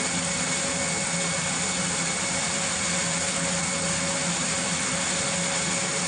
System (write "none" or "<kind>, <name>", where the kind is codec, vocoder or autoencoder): none